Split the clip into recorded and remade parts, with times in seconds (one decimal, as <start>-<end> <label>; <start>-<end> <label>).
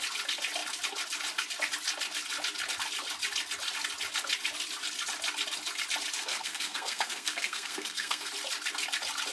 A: 0.0-6.2 recorded; 6.2-8.3 remade; 8.3-9.3 recorded